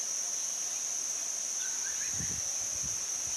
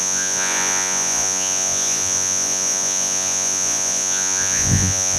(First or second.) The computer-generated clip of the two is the second